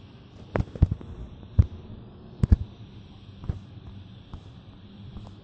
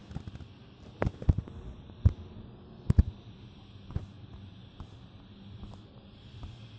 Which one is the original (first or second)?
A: second